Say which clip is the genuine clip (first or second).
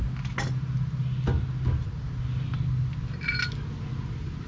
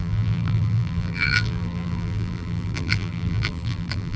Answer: first